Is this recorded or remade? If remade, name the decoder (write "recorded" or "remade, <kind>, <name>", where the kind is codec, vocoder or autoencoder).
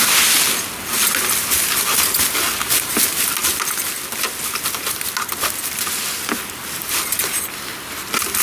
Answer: recorded